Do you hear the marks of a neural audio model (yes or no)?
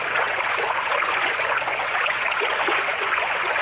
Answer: yes